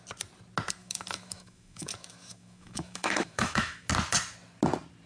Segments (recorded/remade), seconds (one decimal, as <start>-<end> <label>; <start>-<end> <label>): 0.0-0.8 recorded; 0.8-3.9 remade; 3.9-5.1 recorded